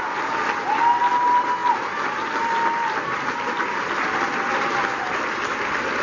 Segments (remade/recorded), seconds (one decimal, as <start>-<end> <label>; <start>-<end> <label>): 0.0-6.0 recorded

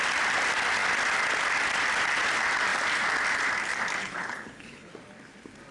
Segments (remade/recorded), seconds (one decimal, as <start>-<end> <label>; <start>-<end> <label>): 0.0-4.0 recorded; 4.0-4.9 remade; 4.9-5.7 recorded

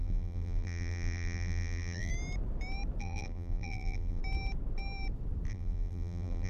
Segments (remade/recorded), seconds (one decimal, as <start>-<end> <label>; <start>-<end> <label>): 0.0-2.1 remade; 2.1-3.0 recorded; 3.0-4.2 remade; 4.2-5.5 recorded; 5.5-6.5 remade

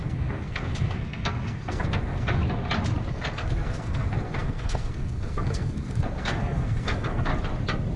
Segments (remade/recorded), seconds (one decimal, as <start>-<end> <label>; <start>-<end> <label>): 0.0-2.4 remade; 2.4-3.1 recorded; 3.1-7.3 remade; 7.3-8.0 recorded

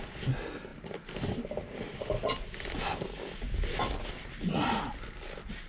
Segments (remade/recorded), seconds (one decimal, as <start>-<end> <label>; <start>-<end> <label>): 0.0-5.7 recorded